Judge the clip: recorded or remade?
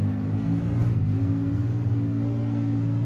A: remade